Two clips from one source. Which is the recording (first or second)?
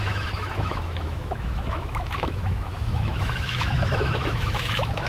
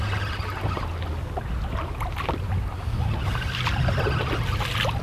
second